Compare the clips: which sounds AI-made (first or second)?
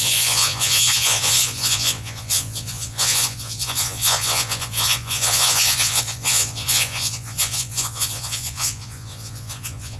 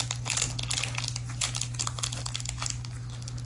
first